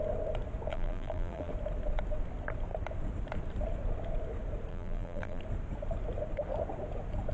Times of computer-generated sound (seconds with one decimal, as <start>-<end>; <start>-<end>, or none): 0.7-1.5; 4.7-5.4